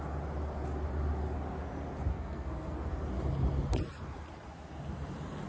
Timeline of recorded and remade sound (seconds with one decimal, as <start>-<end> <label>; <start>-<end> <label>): 0.0-2.1 recorded; 2.1-2.9 remade; 2.9-5.5 recorded